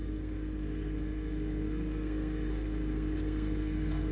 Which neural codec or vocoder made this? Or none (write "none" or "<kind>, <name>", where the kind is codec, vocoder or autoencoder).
codec, SNAC